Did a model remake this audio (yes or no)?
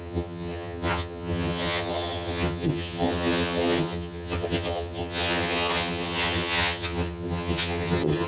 yes